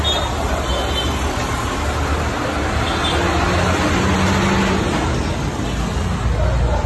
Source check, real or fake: real